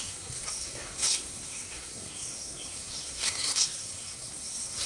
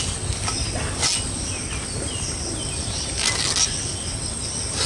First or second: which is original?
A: second